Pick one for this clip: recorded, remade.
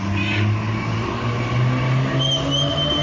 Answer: recorded